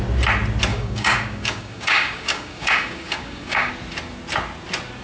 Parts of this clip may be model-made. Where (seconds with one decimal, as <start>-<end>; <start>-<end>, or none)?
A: 0.7-3.7